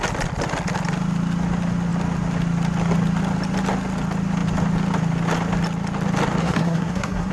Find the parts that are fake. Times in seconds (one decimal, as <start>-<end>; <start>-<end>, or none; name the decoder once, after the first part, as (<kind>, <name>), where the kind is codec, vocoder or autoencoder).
6.4-7.3 (codec, SNAC)